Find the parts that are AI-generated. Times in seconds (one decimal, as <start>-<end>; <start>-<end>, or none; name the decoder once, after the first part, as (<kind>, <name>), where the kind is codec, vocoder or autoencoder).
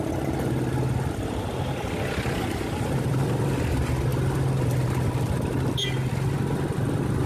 none